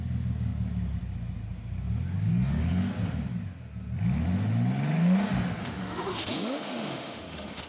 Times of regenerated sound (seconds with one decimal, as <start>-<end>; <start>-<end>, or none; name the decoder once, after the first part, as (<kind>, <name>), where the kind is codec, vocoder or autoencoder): 2.3-2.9 (autoencoder, DAC-VAE); 5.6-7.7